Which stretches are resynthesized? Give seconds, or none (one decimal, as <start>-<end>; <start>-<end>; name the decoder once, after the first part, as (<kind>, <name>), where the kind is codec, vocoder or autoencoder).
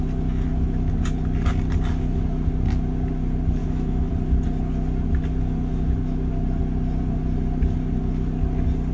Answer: 3.6-4.1 (autoencoder, DAC-VAE)